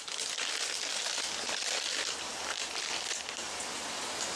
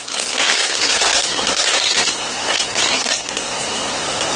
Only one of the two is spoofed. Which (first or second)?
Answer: second